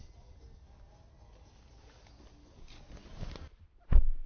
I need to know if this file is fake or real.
real